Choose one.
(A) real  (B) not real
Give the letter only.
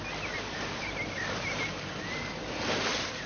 A